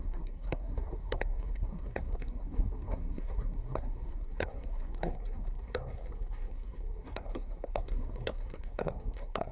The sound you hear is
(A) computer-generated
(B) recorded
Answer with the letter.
A